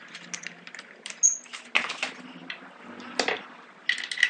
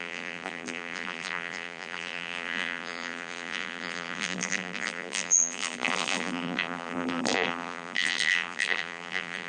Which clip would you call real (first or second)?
first